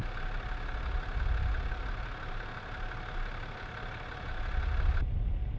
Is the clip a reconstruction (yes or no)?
no